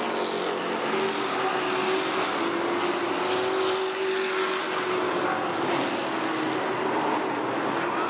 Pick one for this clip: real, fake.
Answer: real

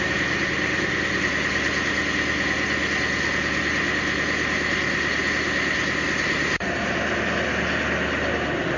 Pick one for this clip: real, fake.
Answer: real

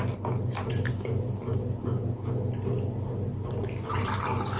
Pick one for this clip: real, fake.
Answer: real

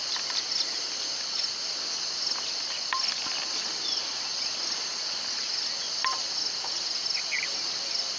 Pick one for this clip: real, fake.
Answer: real